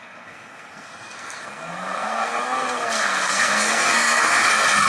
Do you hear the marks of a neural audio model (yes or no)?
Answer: yes